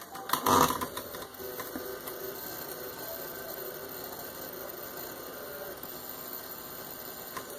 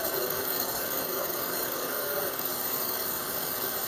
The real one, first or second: first